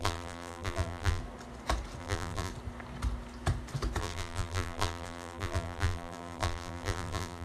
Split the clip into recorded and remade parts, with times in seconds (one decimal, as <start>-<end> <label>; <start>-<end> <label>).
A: 0.0-1.2 remade; 1.2-2.0 recorded; 2.0-2.5 remade; 2.5-4.0 recorded; 4.0-7.4 remade

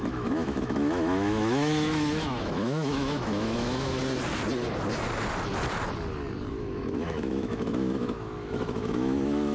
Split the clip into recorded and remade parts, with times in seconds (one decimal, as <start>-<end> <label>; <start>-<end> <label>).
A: 0.0-4.0 remade; 4.0-6.5 recorded; 6.5-9.5 remade

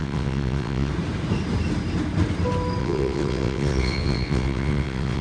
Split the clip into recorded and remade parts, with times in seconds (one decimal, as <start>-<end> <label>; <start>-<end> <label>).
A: 0.0-0.9 remade; 0.9-2.8 recorded; 2.8-5.2 remade

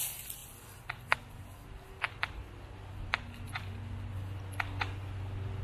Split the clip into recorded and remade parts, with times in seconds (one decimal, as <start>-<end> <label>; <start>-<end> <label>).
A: 0.0-5.6 recorded

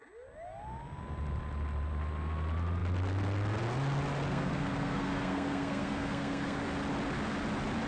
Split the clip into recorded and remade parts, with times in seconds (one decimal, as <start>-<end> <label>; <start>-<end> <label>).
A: 0.0-4.3 recorded; 4.3-6.6 remade; 6.6-7.9 recorded

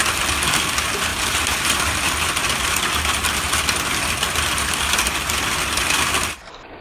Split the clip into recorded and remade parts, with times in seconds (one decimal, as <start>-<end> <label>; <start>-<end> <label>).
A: 0.0-1.1 recorded; 1.1-2.4 remade; 2.4-6.8 recorded

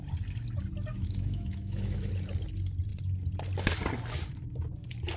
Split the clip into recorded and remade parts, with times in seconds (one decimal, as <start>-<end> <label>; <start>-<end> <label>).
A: 0.0-0.9 recorded; 0.9-2.1 remade; 2.1-5.2 recorded

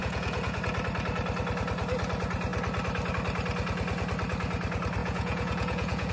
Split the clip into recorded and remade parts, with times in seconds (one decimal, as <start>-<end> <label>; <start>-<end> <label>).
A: 0.0-0.6 remade; 0.6-5.0 recorded; 5.0-6.1 remade